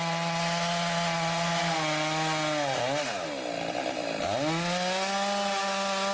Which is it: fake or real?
real